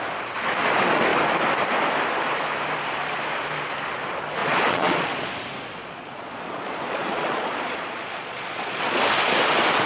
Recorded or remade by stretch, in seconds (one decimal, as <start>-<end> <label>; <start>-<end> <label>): 0.0-4.4 recorded; 4.4-5.3 remade; 5.3-5.8 recorded; 5.8-9.0 remade; 9.0-9.9 recorded